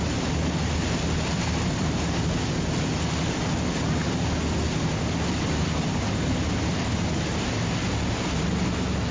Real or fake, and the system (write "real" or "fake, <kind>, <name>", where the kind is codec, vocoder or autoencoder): real